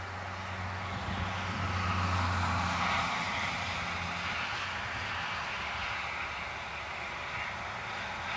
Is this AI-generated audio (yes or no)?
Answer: no